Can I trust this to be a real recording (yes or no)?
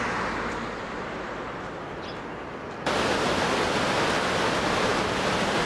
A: yes